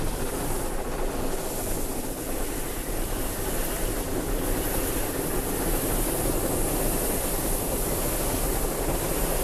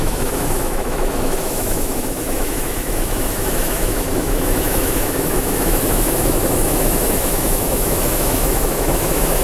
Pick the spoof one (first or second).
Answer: second